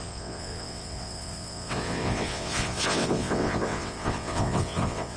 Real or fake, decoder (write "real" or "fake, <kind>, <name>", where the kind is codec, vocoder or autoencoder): fake, vocoder, WaveNeXt